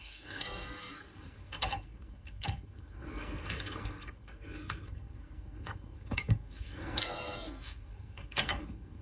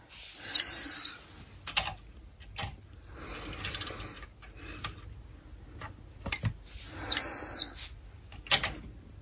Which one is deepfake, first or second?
first